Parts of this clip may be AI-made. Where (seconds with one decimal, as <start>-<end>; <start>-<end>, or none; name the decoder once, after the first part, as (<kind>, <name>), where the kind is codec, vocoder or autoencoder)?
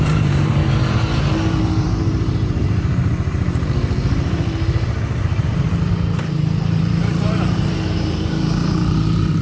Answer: 0.0-0.6 (vocoder, BigVGAN v2); 1.6-9.4